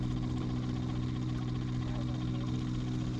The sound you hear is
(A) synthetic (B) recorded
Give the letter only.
B